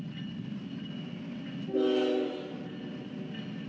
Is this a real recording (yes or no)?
yes